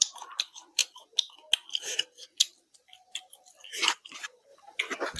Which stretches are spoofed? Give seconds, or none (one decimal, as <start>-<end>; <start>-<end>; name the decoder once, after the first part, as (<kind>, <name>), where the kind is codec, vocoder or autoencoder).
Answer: 0.0-0.8 (vocoder, BigVGAN v2); 3.7-4.5